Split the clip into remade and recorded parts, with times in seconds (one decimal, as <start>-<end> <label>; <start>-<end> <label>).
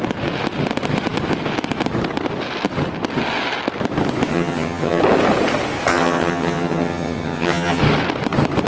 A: 0.0-4.3 recorded; 4.3-5.0 remade; 5.0-5.9 recorded; 5.9-7.8 remade; 7.8-8.7 recorded